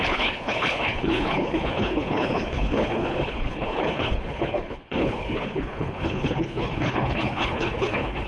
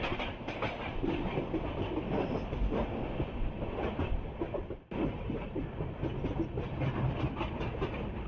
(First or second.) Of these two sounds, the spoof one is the first